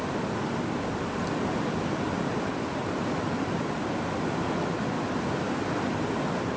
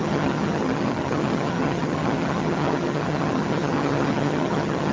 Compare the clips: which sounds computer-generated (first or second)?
second